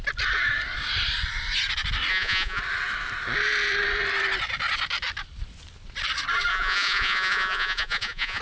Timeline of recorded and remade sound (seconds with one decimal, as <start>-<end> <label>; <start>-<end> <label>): 0.0-2.1 recorded; 2.1-2.6 remade; 2.6-6.5 recorded; 6.5-8.4 remade